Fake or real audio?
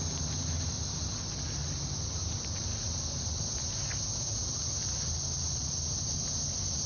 real